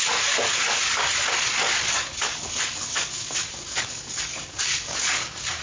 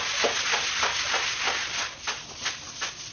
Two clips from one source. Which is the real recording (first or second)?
second